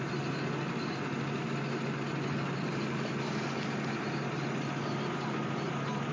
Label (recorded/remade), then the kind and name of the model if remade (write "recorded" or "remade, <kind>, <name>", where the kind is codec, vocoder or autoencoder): recorded